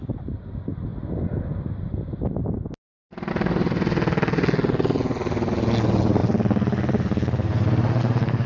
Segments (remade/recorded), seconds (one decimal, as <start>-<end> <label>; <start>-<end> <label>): 0.0-8.5 recorded